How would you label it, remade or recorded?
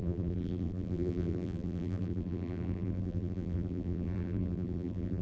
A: remade